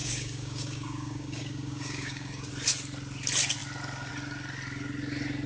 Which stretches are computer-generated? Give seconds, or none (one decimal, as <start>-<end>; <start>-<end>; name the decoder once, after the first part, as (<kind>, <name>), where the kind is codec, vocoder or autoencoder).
0.0-2.5 (codec, DAC)